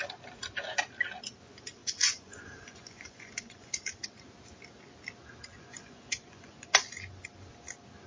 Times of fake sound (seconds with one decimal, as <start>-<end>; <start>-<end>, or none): 1.8-3.7; 5.5-6.8